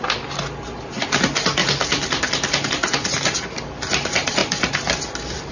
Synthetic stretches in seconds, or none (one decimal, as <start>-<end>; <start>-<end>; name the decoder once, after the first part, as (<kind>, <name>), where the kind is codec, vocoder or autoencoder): none